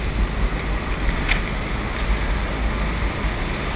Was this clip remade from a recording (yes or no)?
no